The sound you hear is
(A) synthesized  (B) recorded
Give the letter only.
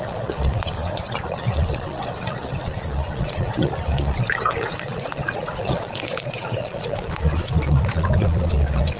A